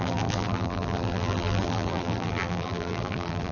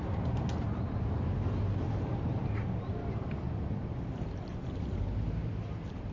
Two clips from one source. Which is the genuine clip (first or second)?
second